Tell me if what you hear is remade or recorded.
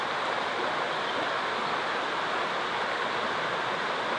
recorded